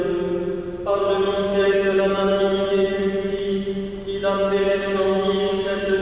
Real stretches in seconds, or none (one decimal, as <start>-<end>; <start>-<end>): 0.0-1.5; 3.0-4.2